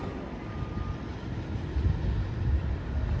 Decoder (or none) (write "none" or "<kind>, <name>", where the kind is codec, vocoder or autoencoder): none